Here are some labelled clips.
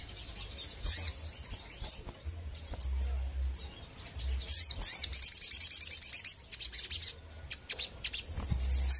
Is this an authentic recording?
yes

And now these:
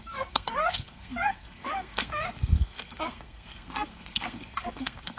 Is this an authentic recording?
no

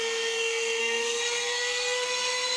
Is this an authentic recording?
no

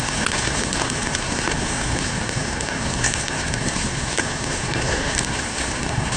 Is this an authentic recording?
no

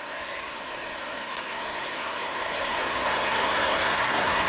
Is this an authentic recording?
no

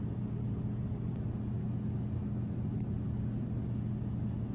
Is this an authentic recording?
yes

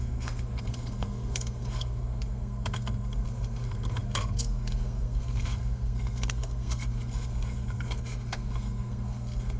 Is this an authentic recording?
no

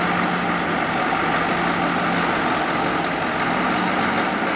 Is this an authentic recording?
yes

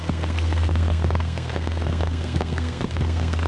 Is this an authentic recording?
no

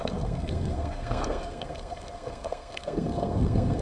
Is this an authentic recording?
no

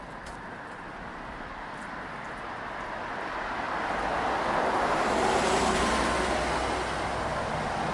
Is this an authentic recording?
yes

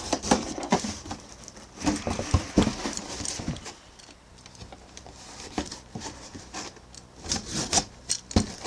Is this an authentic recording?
yes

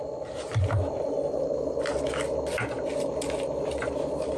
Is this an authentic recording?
yes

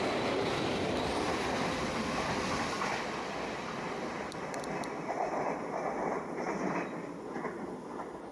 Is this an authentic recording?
yes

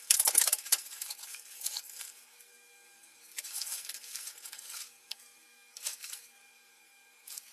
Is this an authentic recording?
no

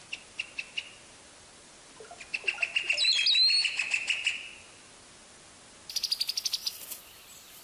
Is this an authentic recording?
yes